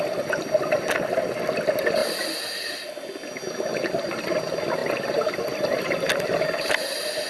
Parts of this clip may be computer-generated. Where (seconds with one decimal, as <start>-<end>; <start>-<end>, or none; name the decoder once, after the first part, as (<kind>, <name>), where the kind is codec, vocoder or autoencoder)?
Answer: none